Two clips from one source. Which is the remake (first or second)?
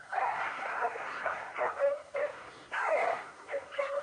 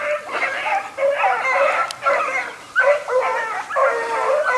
first